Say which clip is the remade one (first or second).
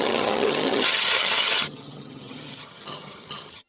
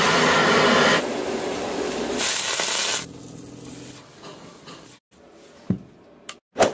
first